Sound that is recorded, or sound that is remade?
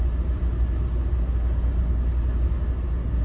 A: recorded